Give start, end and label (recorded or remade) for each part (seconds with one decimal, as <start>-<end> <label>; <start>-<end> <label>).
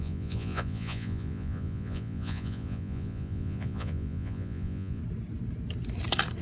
0.0-5.0 remade; 5.0-6.4 recorded